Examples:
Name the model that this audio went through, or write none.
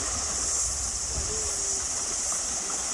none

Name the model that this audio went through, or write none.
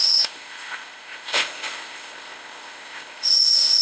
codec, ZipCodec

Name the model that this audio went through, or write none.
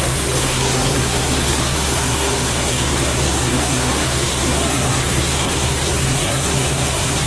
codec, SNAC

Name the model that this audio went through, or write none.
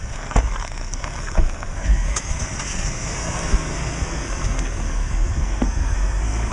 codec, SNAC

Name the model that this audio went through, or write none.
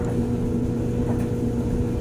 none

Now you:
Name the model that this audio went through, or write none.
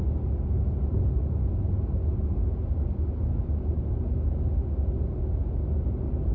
none